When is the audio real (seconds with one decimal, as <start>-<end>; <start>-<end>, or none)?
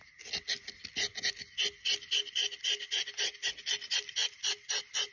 0.0-5.1